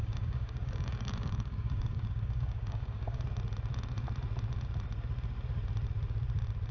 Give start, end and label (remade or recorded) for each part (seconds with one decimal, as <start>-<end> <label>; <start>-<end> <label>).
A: 0.0-3.2 remade; 3.2-6.7 recorded